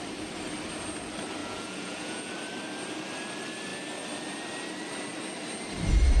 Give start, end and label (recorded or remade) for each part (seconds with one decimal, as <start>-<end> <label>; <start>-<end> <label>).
0.0-1.4 recorded; 1.4-2.3 remade; 2.3-6.2 recorded